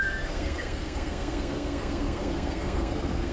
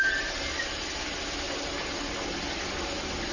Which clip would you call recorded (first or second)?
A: second